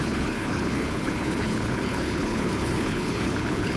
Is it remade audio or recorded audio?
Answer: remade